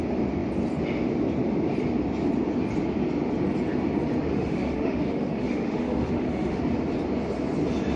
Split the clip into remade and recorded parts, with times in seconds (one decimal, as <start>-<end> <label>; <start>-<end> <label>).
0.0-4.3 recorded; 4.3-6.6 remade; 6.6-8.0 recorded